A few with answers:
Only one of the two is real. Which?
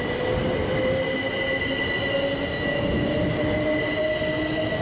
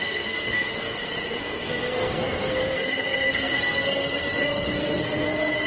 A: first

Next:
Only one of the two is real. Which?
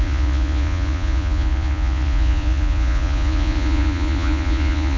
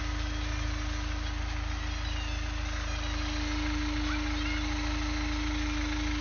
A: second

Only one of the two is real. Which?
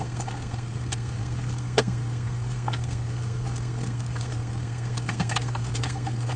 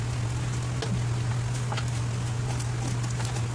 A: second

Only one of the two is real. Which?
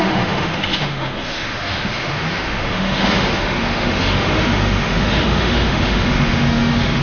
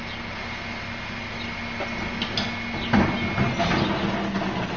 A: second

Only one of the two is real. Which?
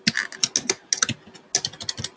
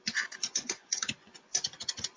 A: first